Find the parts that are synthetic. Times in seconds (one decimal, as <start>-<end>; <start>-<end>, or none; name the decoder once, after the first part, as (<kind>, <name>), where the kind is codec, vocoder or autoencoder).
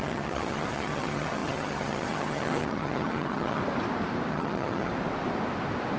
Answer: 0.0-3.6 (vocoder, HiFi-GAN); 4.3-4.9